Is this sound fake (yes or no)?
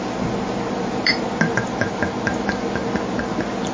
no